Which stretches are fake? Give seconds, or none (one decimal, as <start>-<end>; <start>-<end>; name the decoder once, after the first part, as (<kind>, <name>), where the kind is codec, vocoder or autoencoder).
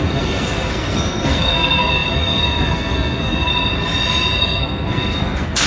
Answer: 0.0-3.5 (codec, SNAC); 4.4-5.7